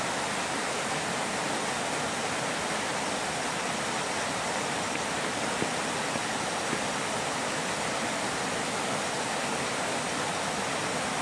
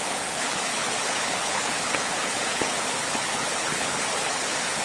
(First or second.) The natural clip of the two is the first